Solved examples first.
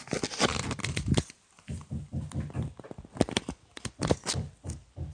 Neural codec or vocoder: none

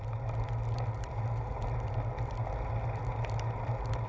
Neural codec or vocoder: none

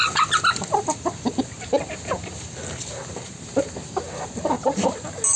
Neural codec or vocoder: none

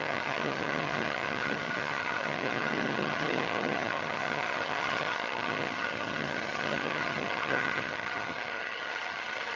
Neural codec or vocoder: vocoder, HiFi-GAN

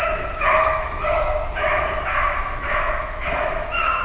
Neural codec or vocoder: autoencoder, DAC-VAE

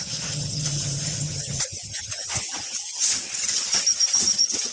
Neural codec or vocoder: vocoder, HiFi-GAN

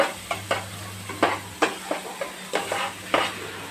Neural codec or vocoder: none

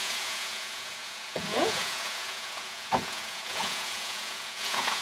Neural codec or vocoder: vocoder, Vocos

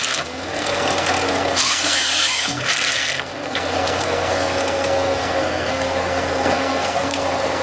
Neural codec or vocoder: codec, SNAC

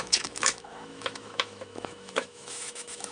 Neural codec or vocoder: autoencoder, DAC-VAE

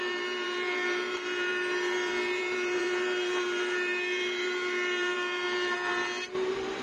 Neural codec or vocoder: vocoder, BigVGAN v2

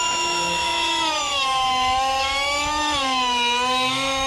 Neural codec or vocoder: autoencoder, DAC-VAE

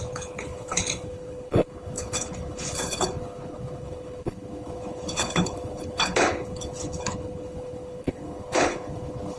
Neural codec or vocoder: codec, HILCodec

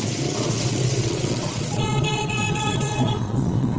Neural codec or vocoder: vocoder, Vocos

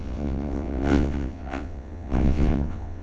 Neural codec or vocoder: vocoder, WaveNeXt